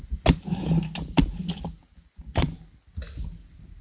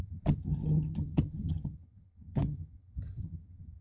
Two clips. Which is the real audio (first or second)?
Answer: first